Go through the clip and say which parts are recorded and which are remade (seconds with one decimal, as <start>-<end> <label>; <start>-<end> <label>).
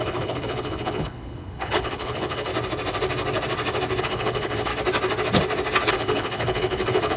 0.0-2.5 remade; 2.5-4.0 recorded; 4.0-4.7 remade; 4.7-5.9 recorded; 5.9-7.2 remade